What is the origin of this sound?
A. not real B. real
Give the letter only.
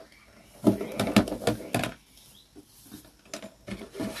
B